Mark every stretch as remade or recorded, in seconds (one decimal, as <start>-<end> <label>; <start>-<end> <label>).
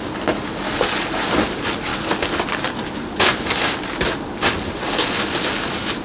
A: 0.0-6.0 recorded